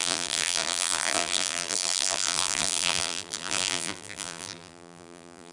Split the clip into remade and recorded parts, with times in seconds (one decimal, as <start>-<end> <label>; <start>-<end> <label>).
0.0-5.5 remade